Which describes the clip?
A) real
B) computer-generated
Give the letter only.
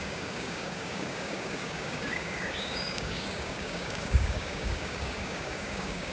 B